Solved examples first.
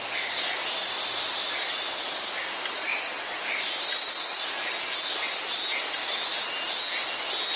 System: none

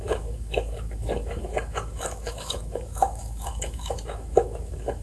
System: autoencoder, DAC-VAE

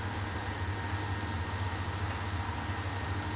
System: none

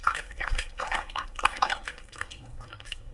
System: codec, SNAC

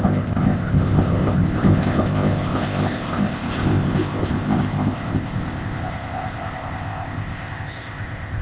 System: codec, ZipCodec